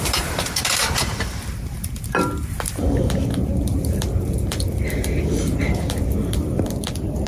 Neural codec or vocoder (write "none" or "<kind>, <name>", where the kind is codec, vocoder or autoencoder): vocoder, BigVGAN v2